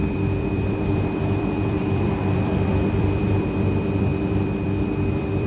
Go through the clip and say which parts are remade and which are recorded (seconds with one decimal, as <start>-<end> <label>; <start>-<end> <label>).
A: 0.0-5.5 remade